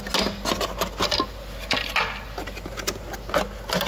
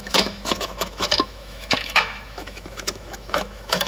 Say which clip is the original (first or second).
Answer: first